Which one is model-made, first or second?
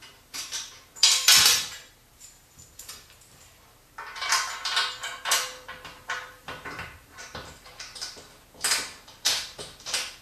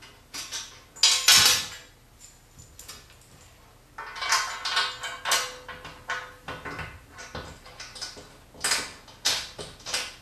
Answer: first